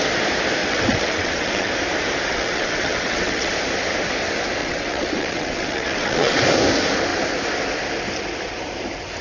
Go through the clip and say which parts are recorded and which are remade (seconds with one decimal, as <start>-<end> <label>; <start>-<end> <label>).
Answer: 0.0-0.6 recorded; 0.6-1.7 remade; 1.7-2.3 recorded; 2.3-3.5 remade; 3.5-4.6 recorded; 4.6-6.4 remade; 6.4-9.2 recorded

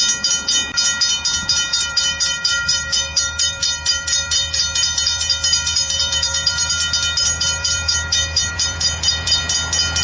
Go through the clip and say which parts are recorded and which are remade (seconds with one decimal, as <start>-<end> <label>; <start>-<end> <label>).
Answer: 0.0-1.7 recorded; 1.7-6.7 remade; 6.7-7.2 recorded; 7.2-9.4 remade; 9.4-10.0 recorded

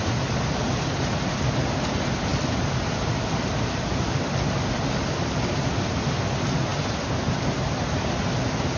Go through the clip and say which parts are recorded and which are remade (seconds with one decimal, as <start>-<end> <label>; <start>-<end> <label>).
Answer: 0.0-8.8 recorded

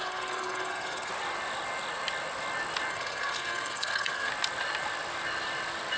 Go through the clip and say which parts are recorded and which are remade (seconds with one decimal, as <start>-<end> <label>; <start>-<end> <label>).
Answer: 0.0-1.1 remade; 1.1-2.9 recorded; 2.9-4.3 remade; 4.3-6.0 recorded

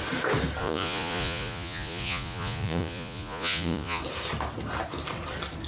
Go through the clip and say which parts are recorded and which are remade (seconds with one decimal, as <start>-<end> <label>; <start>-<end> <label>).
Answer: 0.0-0.6 recorded; 0.6-4.0 remade; 4.0-5.7 recorded

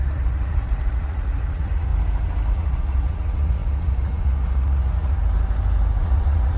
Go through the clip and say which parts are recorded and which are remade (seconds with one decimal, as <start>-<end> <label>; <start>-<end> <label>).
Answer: 0.0-1.9 remade; 1.9-2.5 recorded; 2.5-5.2 remade; 5.2-6.0 recorded; 6.0-6.6 remade

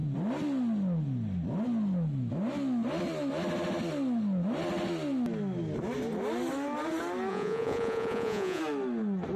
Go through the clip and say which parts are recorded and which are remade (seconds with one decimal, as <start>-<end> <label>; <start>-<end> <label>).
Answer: 0.0-7.3 recorded; 7.3-8.6 remade; 8.6-9.4 recorded